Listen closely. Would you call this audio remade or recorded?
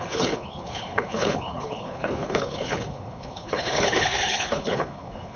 remade